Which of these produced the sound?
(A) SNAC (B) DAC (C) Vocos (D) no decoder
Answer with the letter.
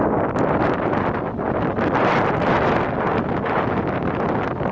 D